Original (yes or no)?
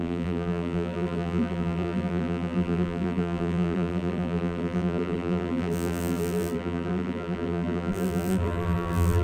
no